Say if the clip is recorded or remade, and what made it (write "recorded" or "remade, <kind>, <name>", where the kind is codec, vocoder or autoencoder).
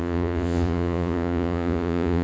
remade, vocoder, Vocos